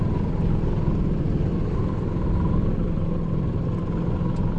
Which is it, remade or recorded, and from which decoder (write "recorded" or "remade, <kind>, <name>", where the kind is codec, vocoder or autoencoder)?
recorded